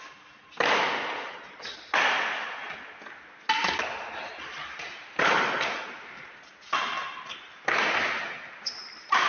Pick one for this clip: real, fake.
real